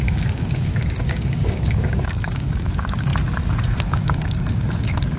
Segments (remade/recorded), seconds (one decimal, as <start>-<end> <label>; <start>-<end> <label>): 0.0-3.1 remade; 3.1-3.8 recorded; 3.8-5.2 remade